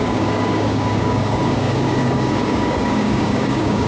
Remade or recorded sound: remade